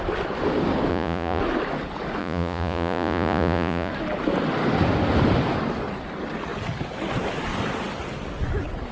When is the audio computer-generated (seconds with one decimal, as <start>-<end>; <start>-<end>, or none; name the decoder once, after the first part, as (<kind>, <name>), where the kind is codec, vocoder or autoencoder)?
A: 0.9-1.4 (vocoder, Vocos); 2.2-3.9